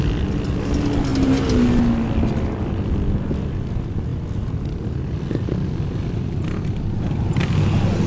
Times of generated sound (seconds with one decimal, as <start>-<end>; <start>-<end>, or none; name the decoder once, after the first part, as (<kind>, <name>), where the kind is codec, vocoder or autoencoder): none